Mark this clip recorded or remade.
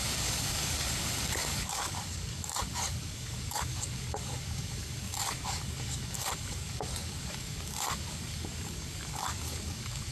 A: remade